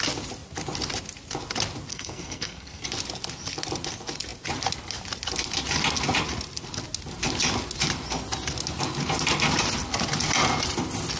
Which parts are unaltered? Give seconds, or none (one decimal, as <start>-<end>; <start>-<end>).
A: 0.0-1.9; 2.8-11.2